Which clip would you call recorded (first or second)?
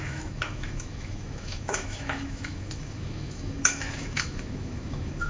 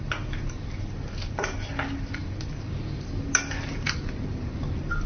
second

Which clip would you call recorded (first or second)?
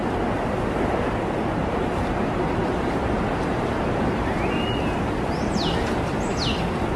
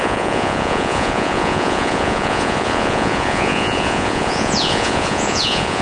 first